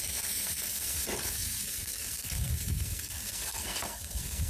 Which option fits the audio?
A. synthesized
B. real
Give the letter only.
A